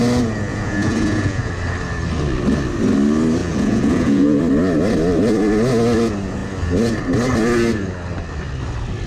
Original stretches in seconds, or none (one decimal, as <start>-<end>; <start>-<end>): 0.0-0.5; 1.5-3.4; 4.4-9.1